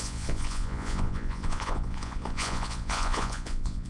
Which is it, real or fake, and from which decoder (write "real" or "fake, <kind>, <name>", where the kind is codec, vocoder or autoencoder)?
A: fake, vocoder, Vocos